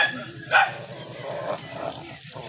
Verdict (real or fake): real